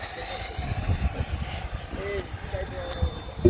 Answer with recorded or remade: recorded